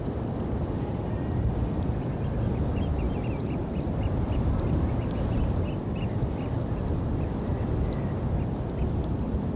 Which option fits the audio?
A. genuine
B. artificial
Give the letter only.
A